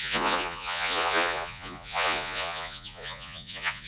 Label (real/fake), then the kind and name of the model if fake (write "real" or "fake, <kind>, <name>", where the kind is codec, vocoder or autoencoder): fake, vocoder, Vocos